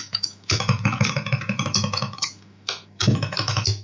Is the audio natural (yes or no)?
no